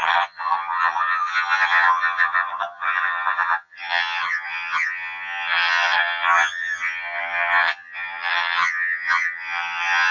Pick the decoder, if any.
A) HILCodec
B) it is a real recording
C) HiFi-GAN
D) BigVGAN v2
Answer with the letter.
C